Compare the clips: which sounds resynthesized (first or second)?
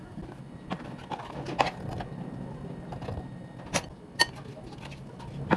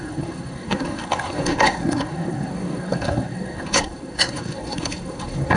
second